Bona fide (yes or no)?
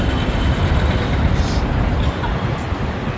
yes